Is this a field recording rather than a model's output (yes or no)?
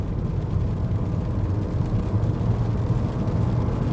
yes